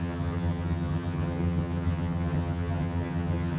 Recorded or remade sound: remade